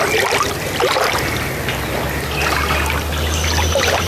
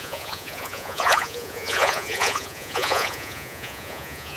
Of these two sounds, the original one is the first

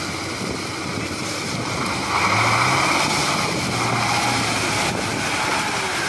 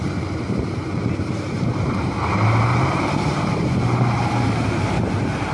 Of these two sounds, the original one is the first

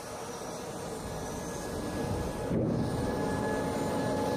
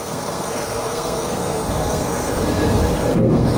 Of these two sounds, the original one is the first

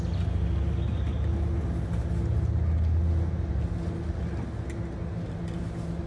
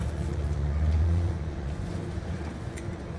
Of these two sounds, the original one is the first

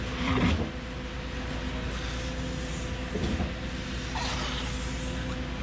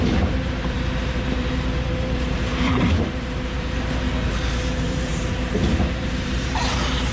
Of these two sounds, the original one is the first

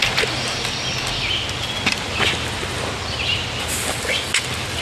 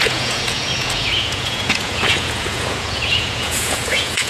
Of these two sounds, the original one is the first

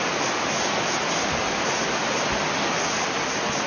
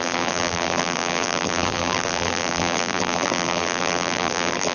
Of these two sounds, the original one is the first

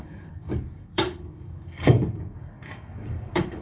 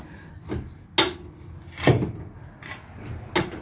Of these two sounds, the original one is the second